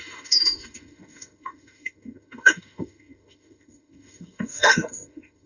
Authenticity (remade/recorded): remade